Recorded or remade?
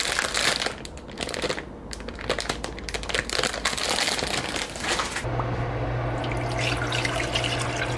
recorded